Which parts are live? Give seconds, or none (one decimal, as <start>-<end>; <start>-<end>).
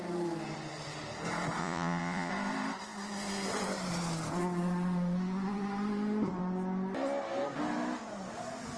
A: 0.0-1.6; 2.3-8.8